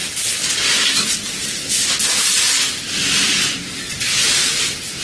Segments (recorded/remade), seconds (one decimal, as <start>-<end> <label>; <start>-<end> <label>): 0.0-3.0 recorded; 3.0-5.0 remade